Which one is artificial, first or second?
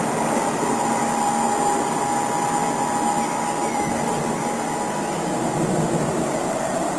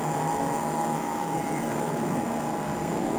second